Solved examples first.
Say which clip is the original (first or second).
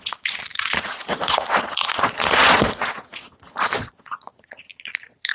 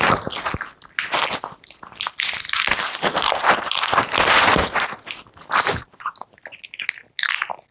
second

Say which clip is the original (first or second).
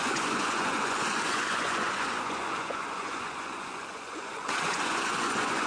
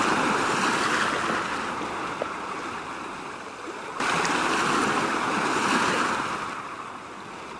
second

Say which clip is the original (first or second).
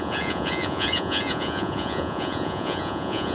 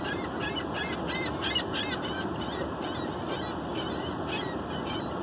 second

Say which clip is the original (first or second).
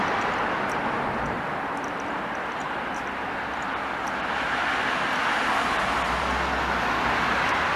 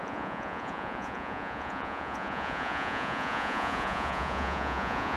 first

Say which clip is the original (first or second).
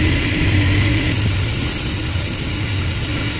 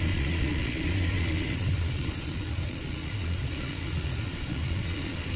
first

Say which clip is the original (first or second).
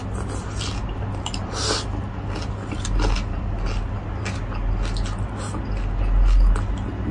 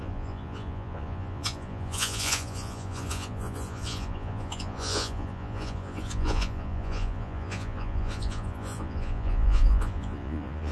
first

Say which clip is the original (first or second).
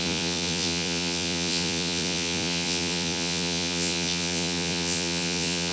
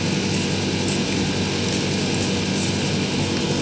second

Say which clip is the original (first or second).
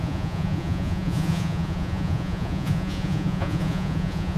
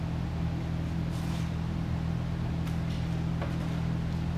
second